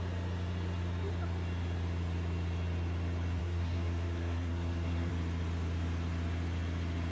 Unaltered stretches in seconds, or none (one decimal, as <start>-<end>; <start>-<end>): 0.0-3.4; 5.1-7.1